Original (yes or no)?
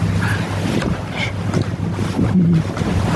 yes